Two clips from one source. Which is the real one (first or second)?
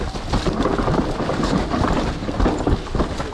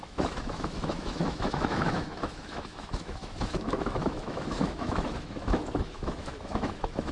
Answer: first